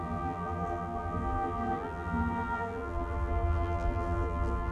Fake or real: fake